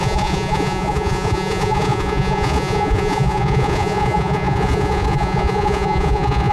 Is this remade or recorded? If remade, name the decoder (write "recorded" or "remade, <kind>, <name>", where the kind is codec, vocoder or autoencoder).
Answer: remade, vocoder, Vocos